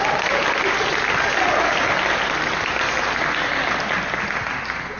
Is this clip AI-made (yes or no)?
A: no